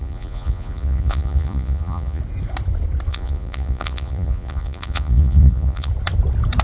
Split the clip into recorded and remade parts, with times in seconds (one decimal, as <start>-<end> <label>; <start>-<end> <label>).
0.0-2.2 remade; 2.2-3.1 recorded; 3.1-5.9 remade; 5.9-6.6 recorded